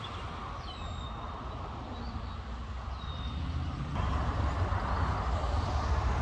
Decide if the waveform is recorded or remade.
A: recorded